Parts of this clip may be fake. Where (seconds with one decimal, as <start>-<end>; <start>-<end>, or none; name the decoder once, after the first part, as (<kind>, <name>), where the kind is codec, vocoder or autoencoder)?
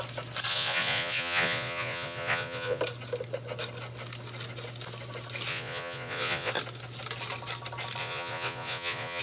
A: 0.5-2.8 (vocoder, Vocos); 5.5-6.5; 8.0-9.2